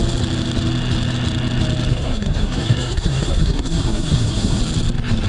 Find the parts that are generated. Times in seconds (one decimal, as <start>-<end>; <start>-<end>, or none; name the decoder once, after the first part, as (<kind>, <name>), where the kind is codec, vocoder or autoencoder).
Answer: 1.9-4.6 (codec, SNAC)